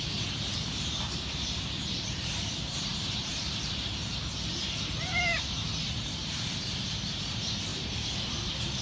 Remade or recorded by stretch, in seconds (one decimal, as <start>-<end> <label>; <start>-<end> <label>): 0.0-7.7 remade; 7.7-8.3 recorded; 8.3-8.8 remade